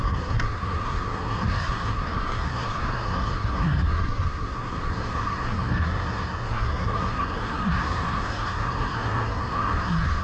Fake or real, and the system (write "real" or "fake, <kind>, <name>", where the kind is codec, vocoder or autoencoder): fake, codec, SNAC